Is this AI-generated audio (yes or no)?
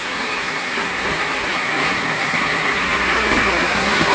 yes